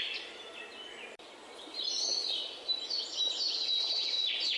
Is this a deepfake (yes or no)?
no